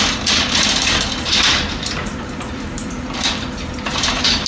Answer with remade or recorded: remade